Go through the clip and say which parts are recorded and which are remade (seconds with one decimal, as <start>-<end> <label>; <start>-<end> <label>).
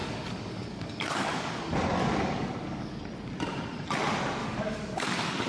0.0-1.6 remade; 1.6-2.0 recorded; 2.0-3.0 remade; 3.0-4.4 recorded; 4.4-5.5 remade